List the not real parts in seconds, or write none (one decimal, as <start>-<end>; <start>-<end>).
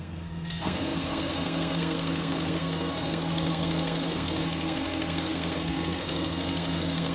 0.0-7.1